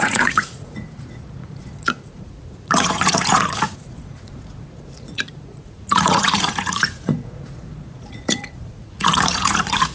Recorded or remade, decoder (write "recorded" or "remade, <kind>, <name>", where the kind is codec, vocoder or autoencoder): remade, vocoder, Vocos